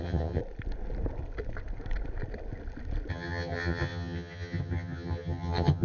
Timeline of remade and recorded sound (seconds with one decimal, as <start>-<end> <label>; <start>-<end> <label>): 0.0-0.4 remade; 0.4-3.1 recorded; 3.1-5.8 remade